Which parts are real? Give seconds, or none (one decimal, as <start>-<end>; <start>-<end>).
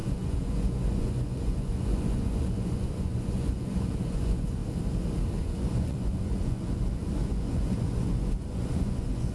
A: 4.6-5.4